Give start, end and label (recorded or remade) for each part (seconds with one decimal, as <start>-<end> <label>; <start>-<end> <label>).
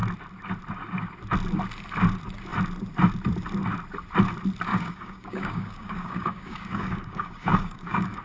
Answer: 0.0-4.7 recorded; 4.7-8.2 remade